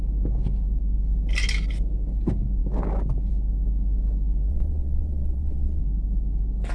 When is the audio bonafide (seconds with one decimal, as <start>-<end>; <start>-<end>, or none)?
0.0-4.5; 5.8-6.7